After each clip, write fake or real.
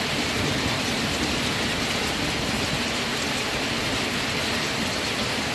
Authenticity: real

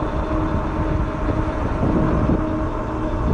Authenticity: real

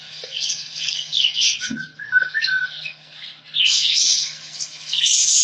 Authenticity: fake